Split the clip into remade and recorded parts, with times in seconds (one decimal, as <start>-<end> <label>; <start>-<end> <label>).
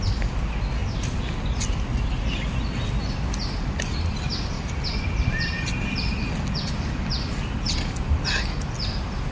0.0-9.3 recorded